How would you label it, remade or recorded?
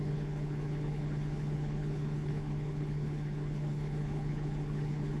remade